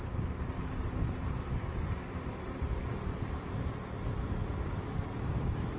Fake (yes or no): yes